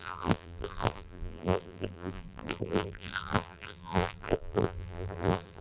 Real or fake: fake